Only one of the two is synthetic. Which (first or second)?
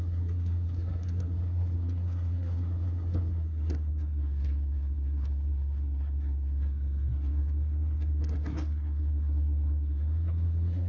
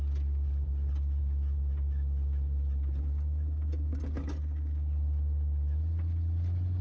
first